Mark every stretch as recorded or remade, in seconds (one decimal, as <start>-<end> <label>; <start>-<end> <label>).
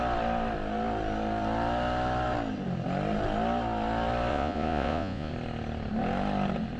0.0-4.3 recorded; 4.3-5.3 remade; 5.3-6.8 recorded